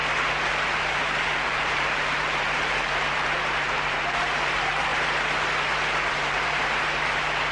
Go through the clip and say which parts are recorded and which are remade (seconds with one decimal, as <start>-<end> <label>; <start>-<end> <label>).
0.0-0.5 recorded; 0.5-4.9 remade; 4.9-6.1 recorded; 6.1-7.5 remade